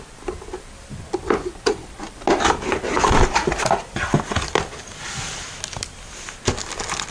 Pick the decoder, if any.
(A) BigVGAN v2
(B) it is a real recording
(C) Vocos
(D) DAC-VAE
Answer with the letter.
B